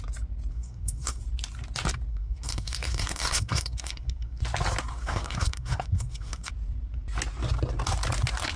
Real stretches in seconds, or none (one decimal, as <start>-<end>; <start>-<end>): 0.0-0.5; 1.2-2.1; 4.4-4.9; 6.5-8.6